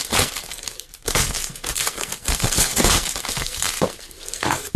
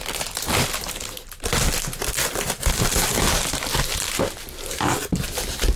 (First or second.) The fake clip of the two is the first